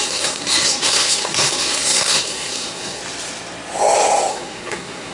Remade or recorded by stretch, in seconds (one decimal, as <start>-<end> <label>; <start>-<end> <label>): 0.0-3.0 remade; 3.0-4.3 recorded; 4.3-5.1 remade